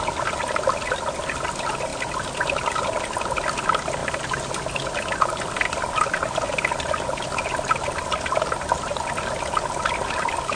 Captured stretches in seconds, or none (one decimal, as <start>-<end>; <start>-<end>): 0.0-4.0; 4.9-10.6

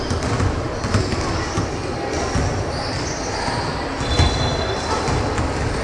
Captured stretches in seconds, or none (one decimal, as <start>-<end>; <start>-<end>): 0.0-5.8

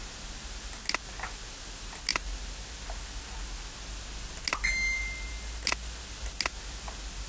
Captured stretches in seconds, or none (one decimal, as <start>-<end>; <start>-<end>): 0.0-7.3

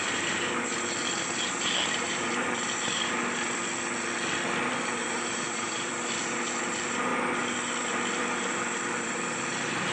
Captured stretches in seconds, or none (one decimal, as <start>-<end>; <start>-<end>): 3.2-4.7; 5.9-6.6; 7.1-8.2